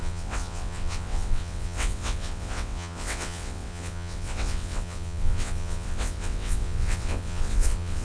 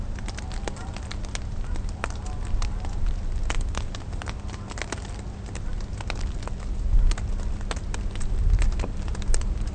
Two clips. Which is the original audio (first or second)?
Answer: second